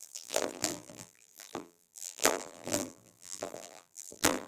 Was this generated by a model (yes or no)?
yes